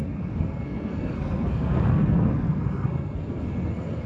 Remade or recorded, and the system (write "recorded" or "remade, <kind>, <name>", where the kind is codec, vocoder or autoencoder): remade, codec, SNAC